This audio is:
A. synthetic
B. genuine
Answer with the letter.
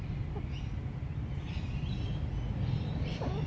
B